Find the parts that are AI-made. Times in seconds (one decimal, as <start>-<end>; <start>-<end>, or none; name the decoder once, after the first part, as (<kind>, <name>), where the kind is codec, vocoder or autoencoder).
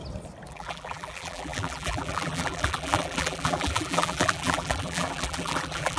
0.5-6.0 (vocoder, BigVGAN v2)